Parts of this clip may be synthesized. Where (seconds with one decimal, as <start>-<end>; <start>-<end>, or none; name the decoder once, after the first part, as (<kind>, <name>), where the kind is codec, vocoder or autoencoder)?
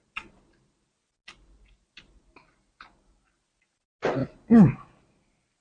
none